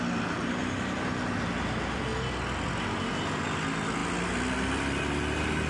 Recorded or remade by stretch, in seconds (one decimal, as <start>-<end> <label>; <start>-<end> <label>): 0.0-5.7 recorded